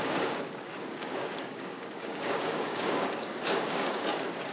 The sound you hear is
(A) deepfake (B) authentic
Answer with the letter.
A